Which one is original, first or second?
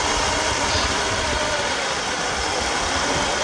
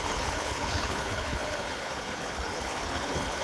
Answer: first